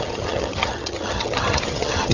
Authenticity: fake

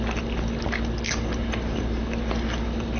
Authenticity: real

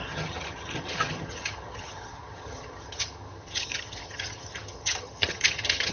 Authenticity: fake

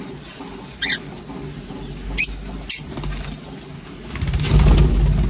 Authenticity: real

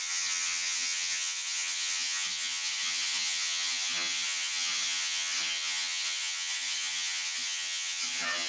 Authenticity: fake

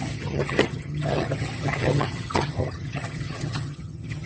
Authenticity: fake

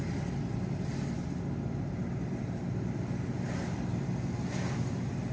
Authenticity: real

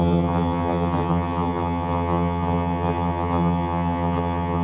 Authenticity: fake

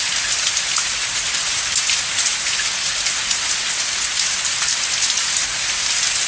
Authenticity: real